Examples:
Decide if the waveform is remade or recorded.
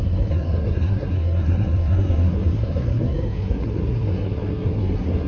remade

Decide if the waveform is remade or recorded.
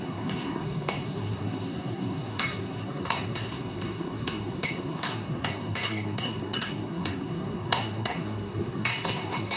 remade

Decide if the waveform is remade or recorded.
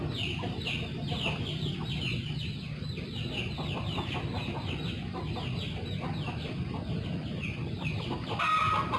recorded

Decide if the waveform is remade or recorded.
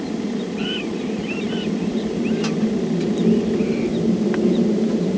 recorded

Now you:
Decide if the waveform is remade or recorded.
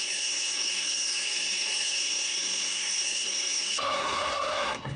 remade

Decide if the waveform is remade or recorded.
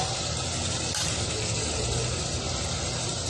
recorded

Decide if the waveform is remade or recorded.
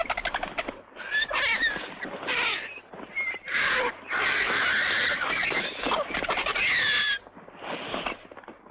recorded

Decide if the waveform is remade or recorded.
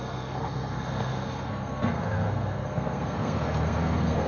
remade